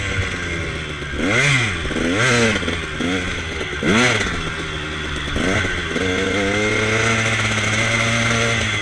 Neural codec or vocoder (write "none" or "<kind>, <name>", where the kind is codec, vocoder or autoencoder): none